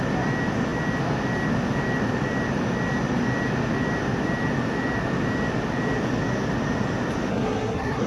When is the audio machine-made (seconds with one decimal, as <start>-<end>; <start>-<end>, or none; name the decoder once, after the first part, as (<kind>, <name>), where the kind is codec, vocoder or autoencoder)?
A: 7.3-8.1 (codec, SNAC)

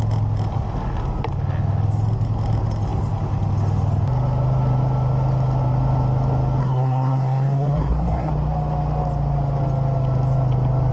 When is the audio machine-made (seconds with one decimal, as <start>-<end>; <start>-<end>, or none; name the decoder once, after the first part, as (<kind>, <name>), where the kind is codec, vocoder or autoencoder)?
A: 6.6-8.3 (codec, SNAC)

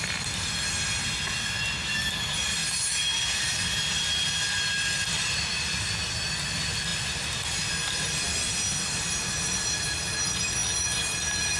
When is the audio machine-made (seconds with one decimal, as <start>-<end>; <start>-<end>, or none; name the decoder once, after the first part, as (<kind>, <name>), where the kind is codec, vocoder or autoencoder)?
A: none

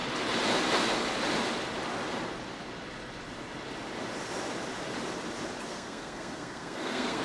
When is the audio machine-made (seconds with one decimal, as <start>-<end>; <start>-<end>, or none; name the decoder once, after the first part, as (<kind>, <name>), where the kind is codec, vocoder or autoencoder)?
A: 5.7-7.2 (codec, SNAC)

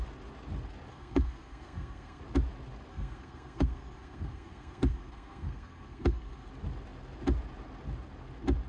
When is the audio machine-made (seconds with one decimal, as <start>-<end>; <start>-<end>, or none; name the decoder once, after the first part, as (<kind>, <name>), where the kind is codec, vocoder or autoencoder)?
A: 0.9-2.2 (codec, SNAC); 2.9-6.5

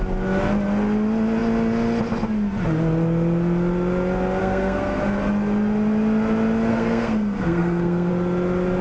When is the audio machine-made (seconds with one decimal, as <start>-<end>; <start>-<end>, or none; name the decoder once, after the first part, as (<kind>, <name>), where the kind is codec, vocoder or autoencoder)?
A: 4.4-5.0 (codec, SNAC); 6.7-8.1